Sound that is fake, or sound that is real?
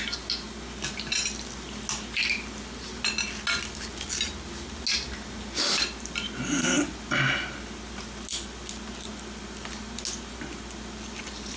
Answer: real